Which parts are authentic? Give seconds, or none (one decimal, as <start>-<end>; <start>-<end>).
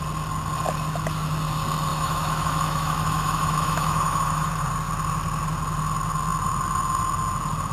0.0-1.9; 4.5-7.7